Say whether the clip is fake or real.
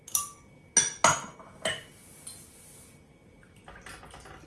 real